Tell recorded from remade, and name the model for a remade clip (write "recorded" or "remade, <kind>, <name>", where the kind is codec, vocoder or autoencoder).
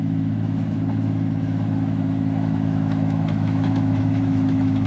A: remade, autoencoder, DAC-VAE